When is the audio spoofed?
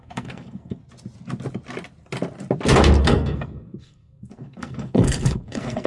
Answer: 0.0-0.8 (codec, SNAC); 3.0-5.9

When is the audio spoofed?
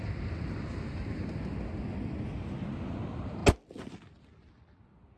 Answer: none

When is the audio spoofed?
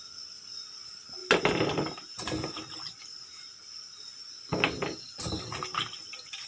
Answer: none